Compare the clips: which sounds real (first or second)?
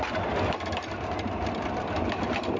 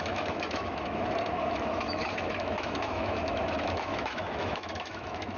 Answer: first